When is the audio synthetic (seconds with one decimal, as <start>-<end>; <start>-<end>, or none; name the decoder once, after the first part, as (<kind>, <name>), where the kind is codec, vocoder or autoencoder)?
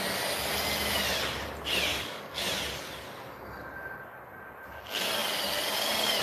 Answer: 1.9-2.4 (codec, DAC)